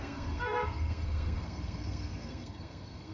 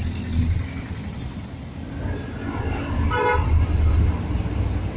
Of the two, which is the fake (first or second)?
first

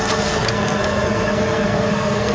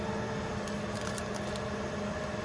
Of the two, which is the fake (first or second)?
first